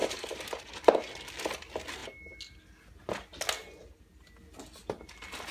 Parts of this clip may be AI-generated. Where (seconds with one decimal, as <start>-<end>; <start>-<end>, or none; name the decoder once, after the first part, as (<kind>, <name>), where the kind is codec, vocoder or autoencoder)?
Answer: 0.0-1.1 (vocoder, BigVGAN v2)